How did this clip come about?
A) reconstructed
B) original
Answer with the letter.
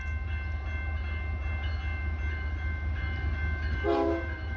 B